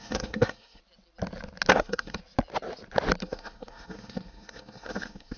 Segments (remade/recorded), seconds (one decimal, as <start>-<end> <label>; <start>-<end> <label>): 0.0-0.8 remade; 0.8-1.7 recorded; 1.7-2.2 remade; 2.2-3.2 recorded; 3.2-5.4 remade